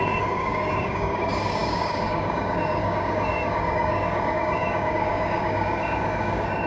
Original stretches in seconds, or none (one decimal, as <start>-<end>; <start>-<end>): none